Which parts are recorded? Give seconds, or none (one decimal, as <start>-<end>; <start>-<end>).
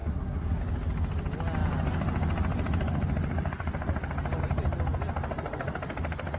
0.6-6.4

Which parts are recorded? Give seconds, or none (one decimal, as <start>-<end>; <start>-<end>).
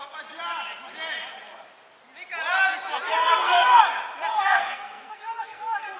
0.0-3.1; 3.8-4.3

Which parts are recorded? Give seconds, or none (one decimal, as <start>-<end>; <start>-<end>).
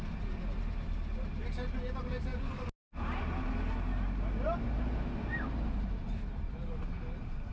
0.0-7.5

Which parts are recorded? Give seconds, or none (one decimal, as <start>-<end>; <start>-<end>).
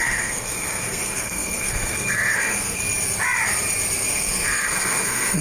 2.8-4.1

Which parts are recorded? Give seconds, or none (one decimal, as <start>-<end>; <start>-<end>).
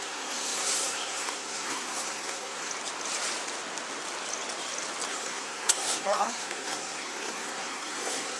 2.7-5.1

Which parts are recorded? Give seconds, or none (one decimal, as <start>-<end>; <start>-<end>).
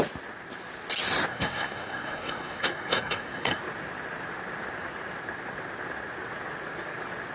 0.0-1.3; 3.6-7.3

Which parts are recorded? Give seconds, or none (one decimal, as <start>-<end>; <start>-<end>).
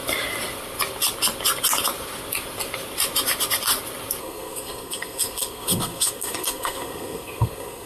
0.0-4.2